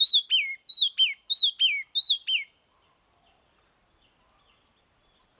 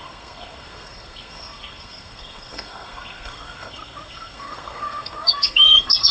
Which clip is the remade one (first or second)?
second